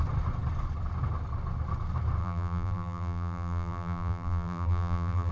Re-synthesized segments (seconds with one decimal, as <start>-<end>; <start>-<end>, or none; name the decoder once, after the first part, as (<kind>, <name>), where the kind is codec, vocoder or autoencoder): 2.2-5.3 (vocoder, BigVGAN v2)